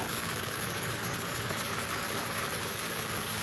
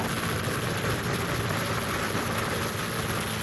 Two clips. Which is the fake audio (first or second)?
first